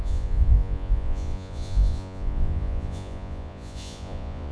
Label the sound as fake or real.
fake